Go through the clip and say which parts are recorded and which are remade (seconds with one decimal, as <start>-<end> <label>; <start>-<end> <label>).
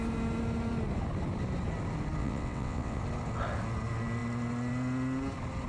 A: 0.0-2.2 recorded; 2.2-3.0 remade; 3.0-5.7 recorded